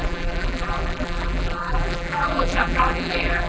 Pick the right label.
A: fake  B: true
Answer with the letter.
A